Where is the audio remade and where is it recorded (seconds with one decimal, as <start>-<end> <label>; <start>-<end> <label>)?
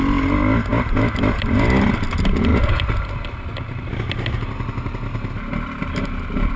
0.0-6.6 recorded